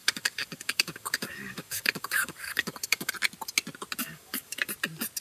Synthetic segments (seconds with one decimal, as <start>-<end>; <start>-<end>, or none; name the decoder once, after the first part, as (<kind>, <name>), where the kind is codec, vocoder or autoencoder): 0.0-3.1 (codec, DAC); 4.0-4.7